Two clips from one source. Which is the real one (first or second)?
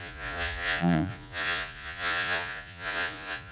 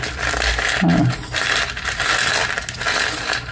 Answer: second